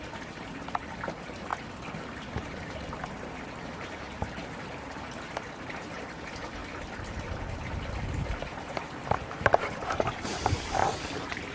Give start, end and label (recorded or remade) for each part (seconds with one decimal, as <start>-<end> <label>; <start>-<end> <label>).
0.0-1.5 remade; 1.5-2.3 recorded; 2.3-6.6 remade; 6.6-8.2 recorded; 8.2-10.8 remade; 10.8-11.5 recorded

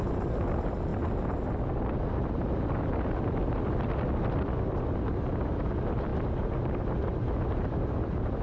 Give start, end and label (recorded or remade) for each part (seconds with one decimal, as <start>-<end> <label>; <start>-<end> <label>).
0.0-8.4 recorded

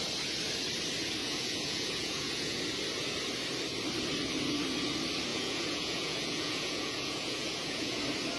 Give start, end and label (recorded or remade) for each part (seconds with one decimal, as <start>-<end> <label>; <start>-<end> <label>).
0.0-1.2 recorded; 1.2-2.6 remade; 2.6-5.3 recorded; 5.3-8.0 remade; 8.0-8.4 recorded

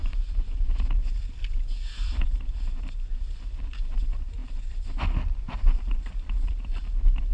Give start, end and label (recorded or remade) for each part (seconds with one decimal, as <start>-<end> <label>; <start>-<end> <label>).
0.0-7.3 recorded

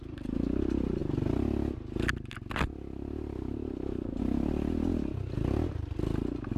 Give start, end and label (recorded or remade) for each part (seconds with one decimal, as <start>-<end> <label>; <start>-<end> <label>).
0.0-6.6 recorded

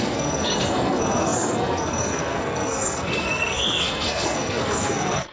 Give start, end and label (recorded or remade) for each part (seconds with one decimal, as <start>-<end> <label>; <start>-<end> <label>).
0.0-5.3 remade

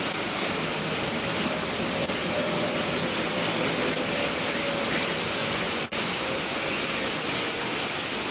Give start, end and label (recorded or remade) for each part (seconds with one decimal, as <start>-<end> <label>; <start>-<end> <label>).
0.0-2.0 recorded; 2.0-3.3 remade; 3.3-5.4 recorded; 5.4-7.7 remade; 7.7-8.3 recorded